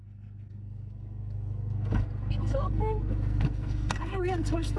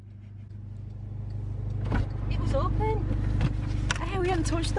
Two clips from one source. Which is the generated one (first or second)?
first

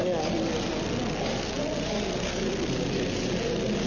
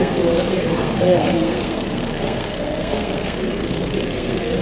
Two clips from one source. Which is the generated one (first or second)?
second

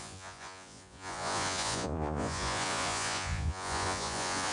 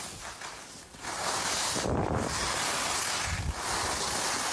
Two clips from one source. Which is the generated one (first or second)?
first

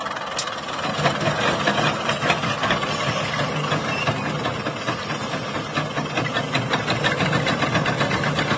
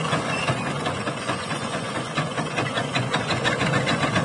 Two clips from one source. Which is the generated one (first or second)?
second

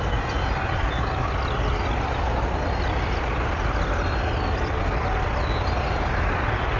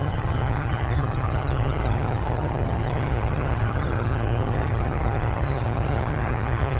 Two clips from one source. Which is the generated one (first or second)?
second